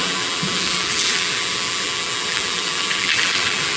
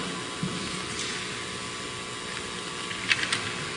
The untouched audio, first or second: second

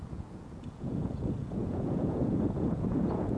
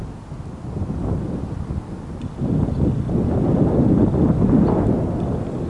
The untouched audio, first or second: second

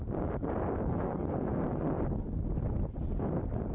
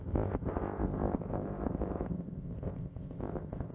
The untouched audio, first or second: first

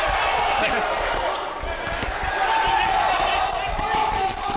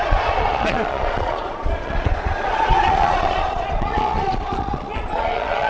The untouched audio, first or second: first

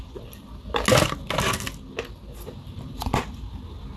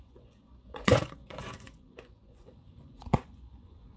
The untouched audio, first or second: first